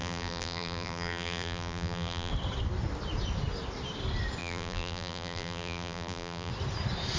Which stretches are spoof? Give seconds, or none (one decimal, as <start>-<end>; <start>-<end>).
0.0-2.3; 4.4-6.5